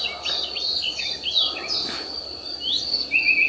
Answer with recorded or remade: recorded